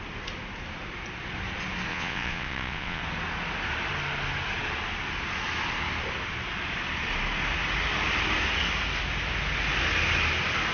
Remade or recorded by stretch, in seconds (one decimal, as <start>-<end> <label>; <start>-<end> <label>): 0.0-1.9 recorded; 1.9-3.0 remade; 3.0-10.7 recorded